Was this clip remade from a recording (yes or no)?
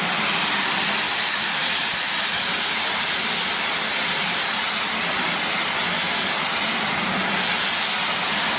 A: no